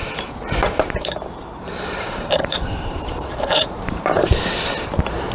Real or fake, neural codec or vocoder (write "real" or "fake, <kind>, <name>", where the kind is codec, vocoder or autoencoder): fake, vocoder, BigVGAN v2